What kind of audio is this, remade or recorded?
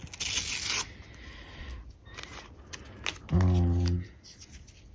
recorded